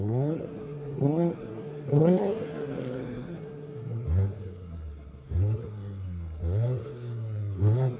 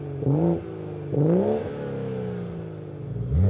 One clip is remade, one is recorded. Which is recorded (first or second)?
second